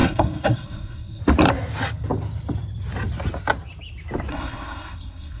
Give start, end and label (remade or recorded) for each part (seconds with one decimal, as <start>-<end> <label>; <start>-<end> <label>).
0.0-1.2 remade; 1.2-4.3 recorded; 4.3-5.4 remade